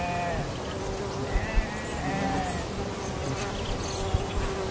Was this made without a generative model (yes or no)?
yes